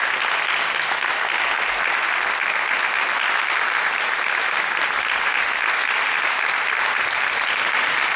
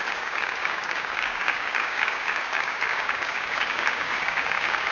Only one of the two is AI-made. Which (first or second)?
second